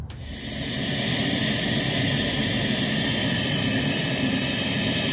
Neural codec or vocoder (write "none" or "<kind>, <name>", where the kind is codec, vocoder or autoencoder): none